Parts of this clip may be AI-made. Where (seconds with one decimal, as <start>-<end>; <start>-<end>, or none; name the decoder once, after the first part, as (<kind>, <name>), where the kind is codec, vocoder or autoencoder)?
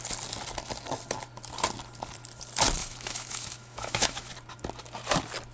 2.8-4.3 (autoencoder, DAC-VAE)